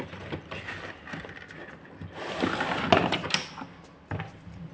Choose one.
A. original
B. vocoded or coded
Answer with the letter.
A